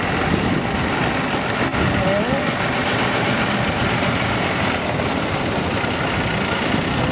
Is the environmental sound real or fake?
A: real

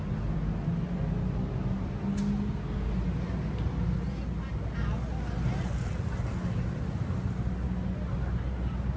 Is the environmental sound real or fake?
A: real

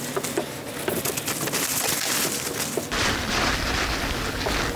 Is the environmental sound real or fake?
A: real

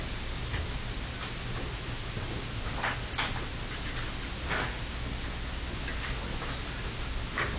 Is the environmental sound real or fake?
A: real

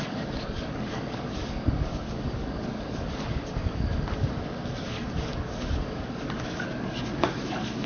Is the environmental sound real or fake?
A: fake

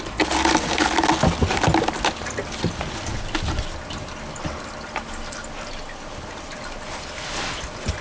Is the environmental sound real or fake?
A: real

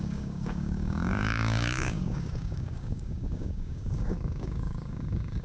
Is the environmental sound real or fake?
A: fake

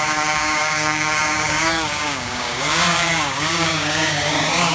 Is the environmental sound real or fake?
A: fake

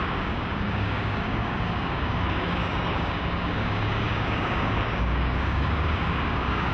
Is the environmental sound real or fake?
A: fake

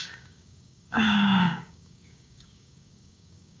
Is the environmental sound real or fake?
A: fake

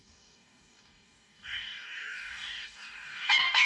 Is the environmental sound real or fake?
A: fake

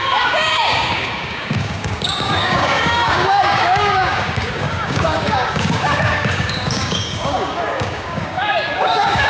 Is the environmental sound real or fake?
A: fake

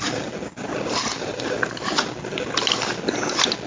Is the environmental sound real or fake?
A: real